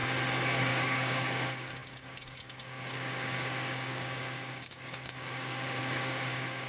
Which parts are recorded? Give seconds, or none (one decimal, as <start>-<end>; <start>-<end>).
0.0-0.7